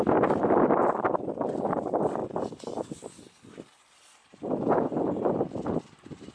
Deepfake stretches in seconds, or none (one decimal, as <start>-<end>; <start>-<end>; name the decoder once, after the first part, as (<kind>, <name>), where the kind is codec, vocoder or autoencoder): 0.0-2.2 (vocoder, BigVGAN v2); 5.8-6.3